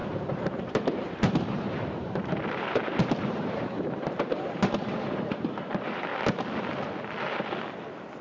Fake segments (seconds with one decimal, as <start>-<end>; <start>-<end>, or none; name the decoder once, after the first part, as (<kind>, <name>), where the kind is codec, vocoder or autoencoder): 0.0-6.1 (vocoder, BigVGAN v2)